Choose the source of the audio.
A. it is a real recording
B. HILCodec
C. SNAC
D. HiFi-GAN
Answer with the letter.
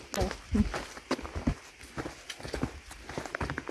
A